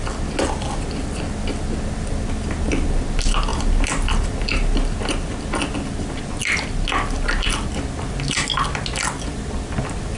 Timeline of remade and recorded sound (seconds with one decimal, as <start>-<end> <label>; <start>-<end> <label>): 0.0-10.2 recorded